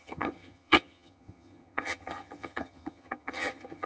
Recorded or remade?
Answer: remade